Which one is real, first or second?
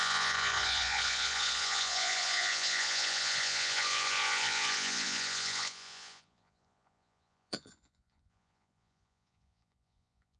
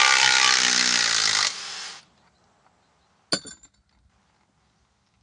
second